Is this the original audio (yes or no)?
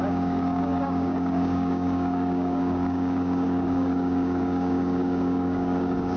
no